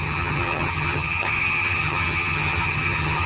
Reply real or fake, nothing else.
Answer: fake